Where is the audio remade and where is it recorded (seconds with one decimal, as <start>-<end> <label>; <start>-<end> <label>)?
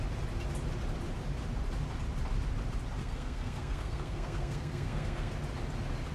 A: 0.0-3.0 recorded; 3.0-5.3 remade; 5.3-6.1 recorded